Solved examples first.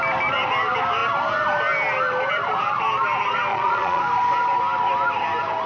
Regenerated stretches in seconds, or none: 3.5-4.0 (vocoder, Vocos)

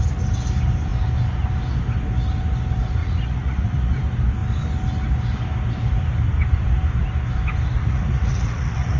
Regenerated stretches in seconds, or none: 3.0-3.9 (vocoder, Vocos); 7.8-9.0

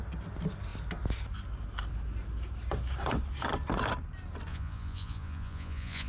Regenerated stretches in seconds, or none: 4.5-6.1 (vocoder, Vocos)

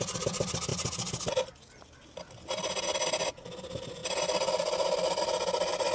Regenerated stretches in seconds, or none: none